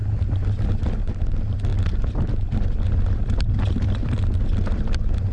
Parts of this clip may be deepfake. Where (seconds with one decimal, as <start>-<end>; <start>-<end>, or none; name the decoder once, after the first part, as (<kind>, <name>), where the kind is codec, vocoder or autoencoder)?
0.0-1.1 (vocoder, BigVGAN v2); 1.7-5.3